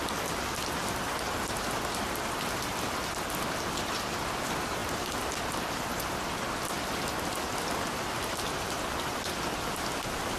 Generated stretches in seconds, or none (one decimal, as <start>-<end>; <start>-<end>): none